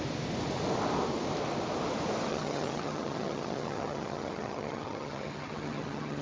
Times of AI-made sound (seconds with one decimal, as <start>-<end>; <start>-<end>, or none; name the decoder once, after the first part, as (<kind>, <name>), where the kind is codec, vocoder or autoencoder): 2.3-6.2 (vocoder, HiFi-GAN)